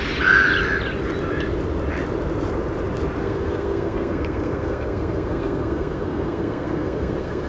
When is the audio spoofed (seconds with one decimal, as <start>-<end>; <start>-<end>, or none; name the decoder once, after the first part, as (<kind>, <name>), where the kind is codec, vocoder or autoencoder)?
3.2-7.5 (codec, SNAC)